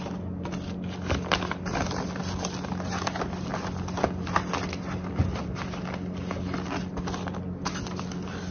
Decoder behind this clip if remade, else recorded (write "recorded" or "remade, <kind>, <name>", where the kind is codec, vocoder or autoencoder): recorded